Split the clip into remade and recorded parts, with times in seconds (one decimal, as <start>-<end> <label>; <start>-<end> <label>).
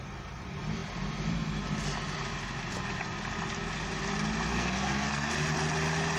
0.0-4.5 recorded; 4.5-5.3 remade; 5.3-6.2 recorded